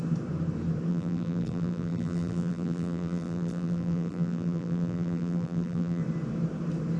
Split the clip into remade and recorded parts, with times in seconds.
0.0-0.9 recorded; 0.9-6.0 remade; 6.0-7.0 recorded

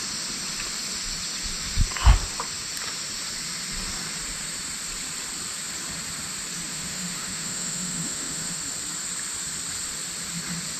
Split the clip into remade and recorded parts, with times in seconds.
0.0-6.7 recorded; 6.7-8.6 remade; 8.6-10.8 recorded

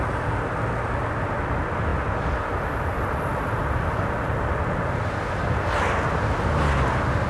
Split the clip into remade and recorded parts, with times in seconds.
0.0-7.3 recorded

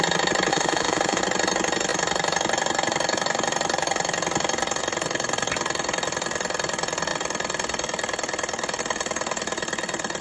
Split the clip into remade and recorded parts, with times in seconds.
0.0-0.5 recorded; 0.5-1.2 remade; 1.2-10.2 recorded

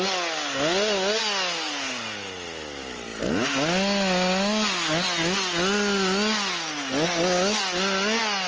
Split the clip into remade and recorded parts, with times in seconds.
0.0-8.5 recorded

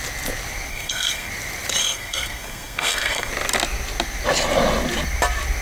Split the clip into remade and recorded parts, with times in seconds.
0.0-0.7 recorded; 0.7-1.3 remade; 1.3-1.8 recorded; 1.8-3.3 remade; 3.3-5.6 recorded

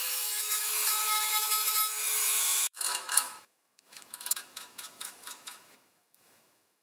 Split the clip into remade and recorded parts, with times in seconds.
0.0-6.8 remade